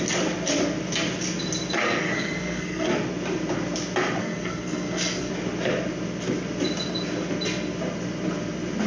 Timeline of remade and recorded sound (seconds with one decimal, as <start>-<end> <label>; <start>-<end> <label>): 0.0-1.8 recorded; 1.8-2.9 remade; 2.9-4.2 recorded; 4.2-5.3 remade; 5.3-8.9 recorded